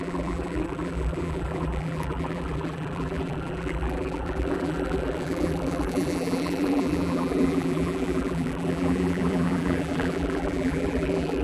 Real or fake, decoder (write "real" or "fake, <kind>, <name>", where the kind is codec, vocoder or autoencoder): fake, vocoder, BigVGAN v2